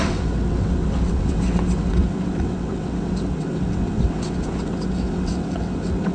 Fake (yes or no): yes